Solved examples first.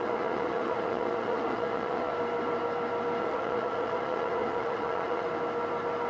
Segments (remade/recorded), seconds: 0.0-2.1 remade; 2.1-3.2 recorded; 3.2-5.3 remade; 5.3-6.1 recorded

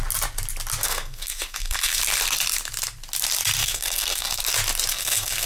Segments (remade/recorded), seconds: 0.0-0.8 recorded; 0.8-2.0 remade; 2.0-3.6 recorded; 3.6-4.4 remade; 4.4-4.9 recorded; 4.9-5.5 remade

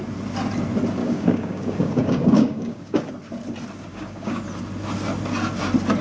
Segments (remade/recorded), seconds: 0.0-1.0 recorded; 1.0-3.1 remade; 3.1-3.9 recorded; 3.9-4.4 remade; 4.4-6.0 recorded

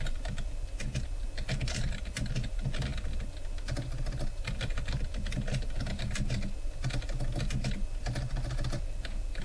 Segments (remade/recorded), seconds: 0.0-9.4 recorded

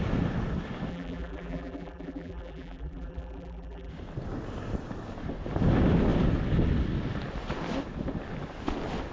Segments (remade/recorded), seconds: 0.0-0.9 recorded; 0.9-3.9 remade; 3.9-9.1 recorded